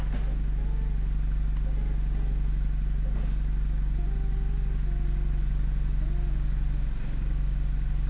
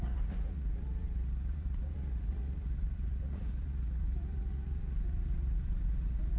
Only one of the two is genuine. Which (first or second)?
first